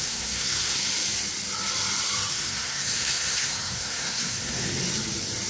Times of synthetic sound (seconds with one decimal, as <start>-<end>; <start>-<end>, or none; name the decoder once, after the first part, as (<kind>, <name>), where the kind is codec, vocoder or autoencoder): 0.0-0.8 (codec, SNAC); 2.3-4.7